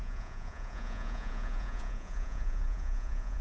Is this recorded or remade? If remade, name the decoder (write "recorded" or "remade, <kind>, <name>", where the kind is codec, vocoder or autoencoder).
remade, vocoder, Vocos